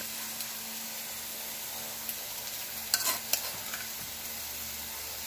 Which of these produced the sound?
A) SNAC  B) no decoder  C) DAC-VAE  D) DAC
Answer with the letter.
B